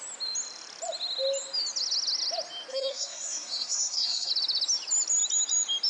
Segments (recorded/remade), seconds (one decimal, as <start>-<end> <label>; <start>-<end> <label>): 0.0-2.7 recorded; 2.7-4.3 remade; 4.3-5.9 recorded